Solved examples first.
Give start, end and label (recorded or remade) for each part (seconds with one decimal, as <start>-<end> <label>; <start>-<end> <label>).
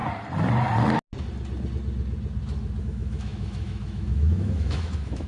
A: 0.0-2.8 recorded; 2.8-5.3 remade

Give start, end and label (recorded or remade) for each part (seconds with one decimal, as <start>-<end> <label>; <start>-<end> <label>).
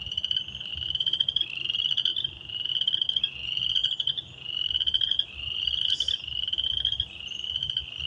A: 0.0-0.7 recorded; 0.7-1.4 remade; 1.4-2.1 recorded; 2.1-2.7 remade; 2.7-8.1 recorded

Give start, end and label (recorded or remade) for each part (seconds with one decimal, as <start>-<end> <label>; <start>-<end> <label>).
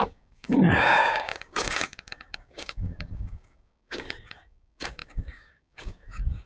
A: 0.0-6.5 remade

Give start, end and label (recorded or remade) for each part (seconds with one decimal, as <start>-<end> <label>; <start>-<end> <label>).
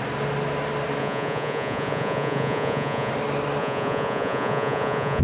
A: 0.0-1.0 recorded; 1.0-3.1 remade; 3.1-3.6 recorded; 3.6-5.2 remade